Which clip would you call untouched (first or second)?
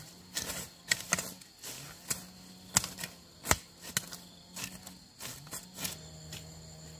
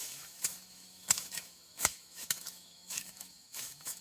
first